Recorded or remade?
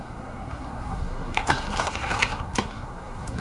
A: remade